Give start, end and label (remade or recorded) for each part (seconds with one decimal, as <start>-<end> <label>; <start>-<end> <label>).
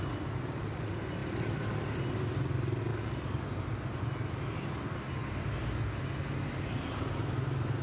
0.0-7.8 recorded